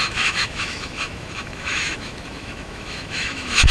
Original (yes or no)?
no